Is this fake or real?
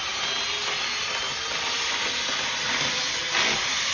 real